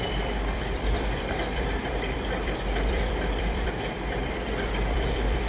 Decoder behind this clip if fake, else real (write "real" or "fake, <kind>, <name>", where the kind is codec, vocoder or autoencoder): fake, vocoder, BigVGAN v2